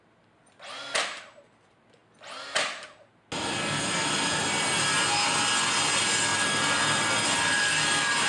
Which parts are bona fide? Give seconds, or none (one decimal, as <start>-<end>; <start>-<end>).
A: 0.0-8.3